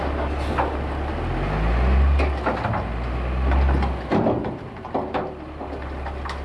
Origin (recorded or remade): recorded